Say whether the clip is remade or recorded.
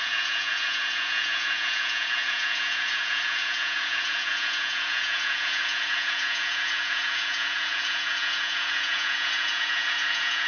remade